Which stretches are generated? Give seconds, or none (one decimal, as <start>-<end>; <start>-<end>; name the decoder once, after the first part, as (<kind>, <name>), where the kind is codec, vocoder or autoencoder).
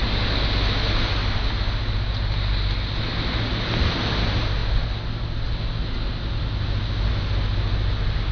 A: none